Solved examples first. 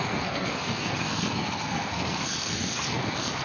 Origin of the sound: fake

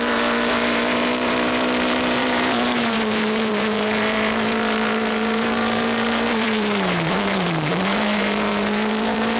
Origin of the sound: fake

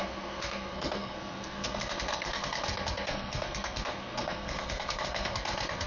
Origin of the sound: fake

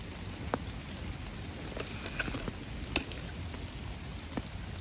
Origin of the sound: real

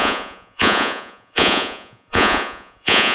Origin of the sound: fake